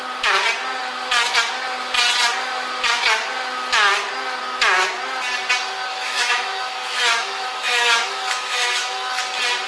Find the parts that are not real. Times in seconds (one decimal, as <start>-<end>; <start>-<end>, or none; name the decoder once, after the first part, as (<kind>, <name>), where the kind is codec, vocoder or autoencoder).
5.9-9.2 (autoencoder, DAC-VAE)